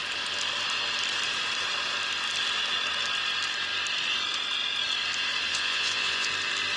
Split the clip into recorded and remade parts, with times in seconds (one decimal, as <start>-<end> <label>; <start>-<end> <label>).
0.0-5.5 recorded; 5.5-6.3 remade; 6.3-6.8 recorded